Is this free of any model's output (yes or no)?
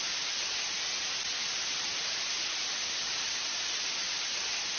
yes